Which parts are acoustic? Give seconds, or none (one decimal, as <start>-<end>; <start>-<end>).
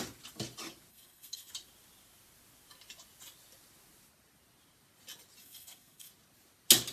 0.0-0.9; 1.5-5.4; 6.1-6.9